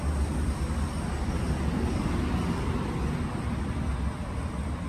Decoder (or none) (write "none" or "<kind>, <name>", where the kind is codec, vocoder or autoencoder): none